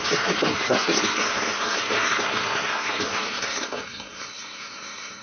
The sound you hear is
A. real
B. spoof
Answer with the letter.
B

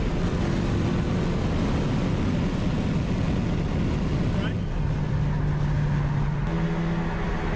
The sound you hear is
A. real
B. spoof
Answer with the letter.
A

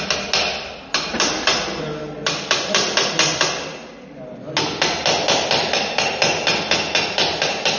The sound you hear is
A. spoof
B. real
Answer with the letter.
B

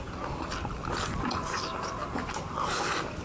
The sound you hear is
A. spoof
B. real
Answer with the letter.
B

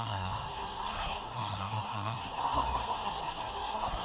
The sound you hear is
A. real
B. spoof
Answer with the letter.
B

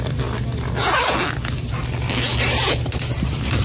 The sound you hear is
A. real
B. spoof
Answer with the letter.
A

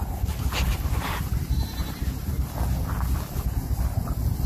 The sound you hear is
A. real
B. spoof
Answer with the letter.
A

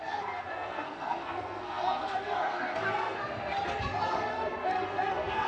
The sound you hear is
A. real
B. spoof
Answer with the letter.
B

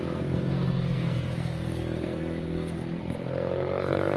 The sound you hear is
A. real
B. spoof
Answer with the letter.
B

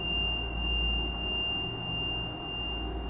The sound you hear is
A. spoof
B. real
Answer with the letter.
B